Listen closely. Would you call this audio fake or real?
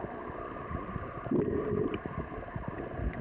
real